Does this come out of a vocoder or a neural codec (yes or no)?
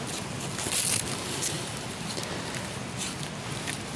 no